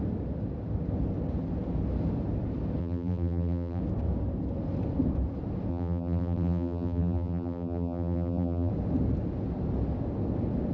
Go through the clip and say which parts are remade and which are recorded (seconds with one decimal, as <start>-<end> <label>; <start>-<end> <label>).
0.0-2.8 recorded; 2.8-3.8 remade; 3.8-5.7 recorded; 5.7-8.7 remade; 8.7-10.7 recorded